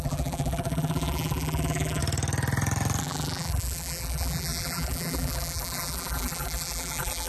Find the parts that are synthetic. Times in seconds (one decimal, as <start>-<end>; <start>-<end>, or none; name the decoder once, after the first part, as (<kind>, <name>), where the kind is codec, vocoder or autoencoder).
0.0-2.0 (vocoder, BigVGAN v2); 3.0-7.3